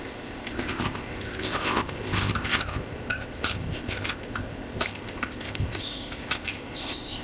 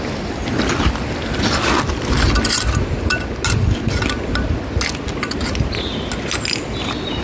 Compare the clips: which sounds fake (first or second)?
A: first